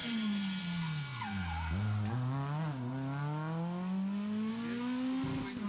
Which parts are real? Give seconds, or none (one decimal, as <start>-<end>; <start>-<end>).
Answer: 0.0-5.7